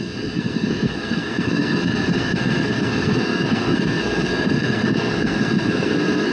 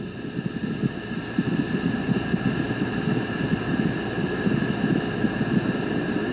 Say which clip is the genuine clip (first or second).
second